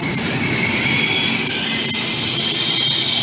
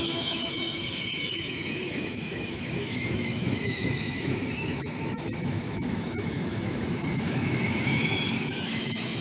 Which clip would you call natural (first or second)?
first